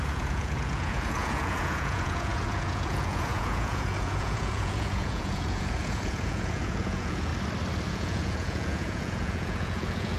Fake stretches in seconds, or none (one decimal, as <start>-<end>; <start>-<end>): 0.0-7.3; 7.9-10.2